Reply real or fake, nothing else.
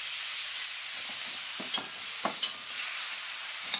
real